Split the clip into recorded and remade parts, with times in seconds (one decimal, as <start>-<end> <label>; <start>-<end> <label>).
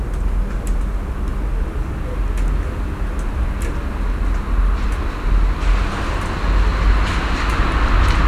0.0-8.3 recorded